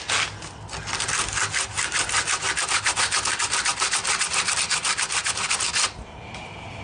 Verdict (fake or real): real